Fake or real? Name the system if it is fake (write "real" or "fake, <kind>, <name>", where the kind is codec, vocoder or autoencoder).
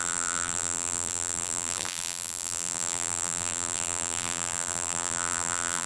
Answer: fake, vocoder, BigVGAN v2